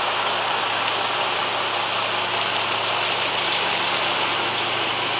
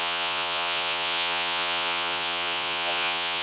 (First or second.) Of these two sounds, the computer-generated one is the second